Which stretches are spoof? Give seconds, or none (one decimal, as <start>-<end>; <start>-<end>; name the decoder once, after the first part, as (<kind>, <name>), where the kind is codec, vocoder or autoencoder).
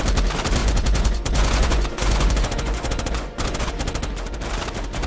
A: 0.6-3.7 (vocoder, Vocos)